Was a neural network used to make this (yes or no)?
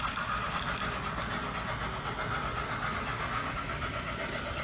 no